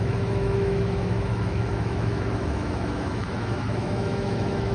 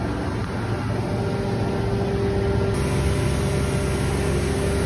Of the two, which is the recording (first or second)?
second